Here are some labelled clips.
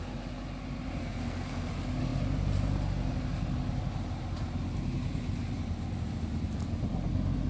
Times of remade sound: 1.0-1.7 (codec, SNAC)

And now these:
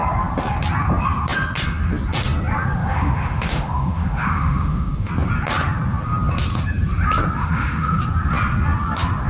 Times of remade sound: 2.8-5.1 (autoencoder, DAC-VAE); 7.4-8.0

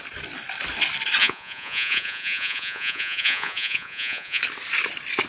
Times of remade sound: 1.2-4.4 (vocoder, Vocos)

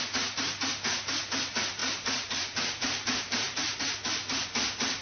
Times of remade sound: 1.8-3.8 (vocoder, BigVGAN v2)

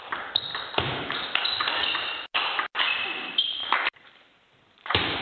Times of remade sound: 0.5-1.1 (vocoder, BigVGAN v2); 3.6-5.2

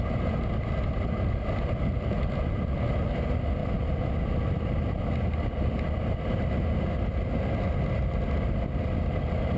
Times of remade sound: none

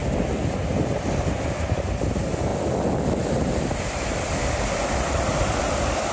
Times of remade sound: none